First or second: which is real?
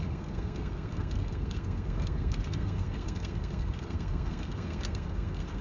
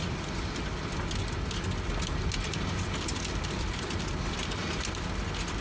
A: second